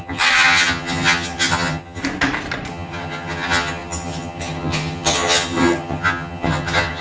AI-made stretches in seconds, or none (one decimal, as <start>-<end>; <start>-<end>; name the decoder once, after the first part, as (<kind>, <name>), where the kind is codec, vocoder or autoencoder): 0.0-2.0 (vocoder, HiFi-GAN); 2.7-7.0